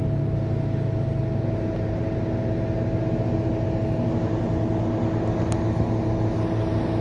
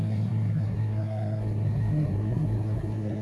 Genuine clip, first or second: first